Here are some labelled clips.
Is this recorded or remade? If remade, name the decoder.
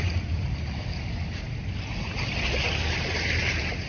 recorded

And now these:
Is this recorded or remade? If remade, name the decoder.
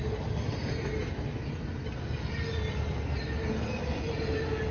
recorded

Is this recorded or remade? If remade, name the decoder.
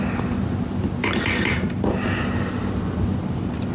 recorded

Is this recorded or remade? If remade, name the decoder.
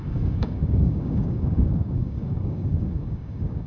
remade, codec, DAC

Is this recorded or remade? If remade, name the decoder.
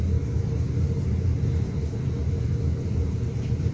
recorded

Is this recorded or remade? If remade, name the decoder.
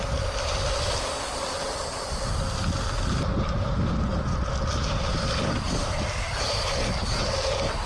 recorded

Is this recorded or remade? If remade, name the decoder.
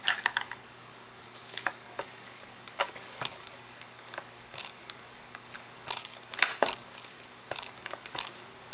remade, codec, DAC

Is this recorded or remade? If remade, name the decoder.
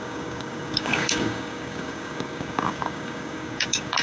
remade, codec, DAC